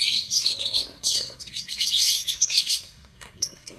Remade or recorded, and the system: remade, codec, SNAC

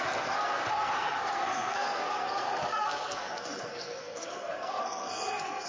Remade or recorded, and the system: remade, codec, SNAC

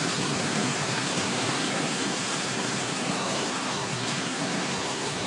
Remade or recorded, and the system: remade, codec, SNAC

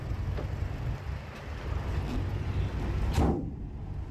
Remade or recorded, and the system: recorded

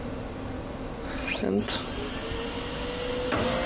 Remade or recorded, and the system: recorded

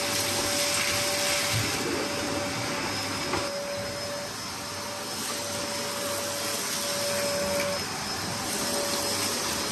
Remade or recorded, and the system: recorded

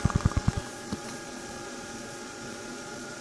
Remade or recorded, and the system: remade, vocoder, Vocos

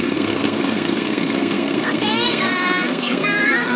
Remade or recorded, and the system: remade, codec, SNAC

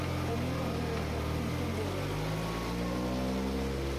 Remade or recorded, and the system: recorded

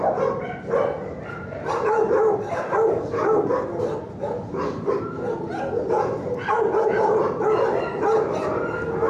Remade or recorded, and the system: recorded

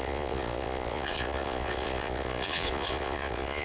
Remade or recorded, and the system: remade, vocoder, Vocos